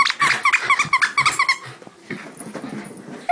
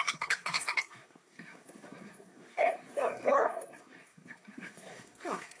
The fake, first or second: second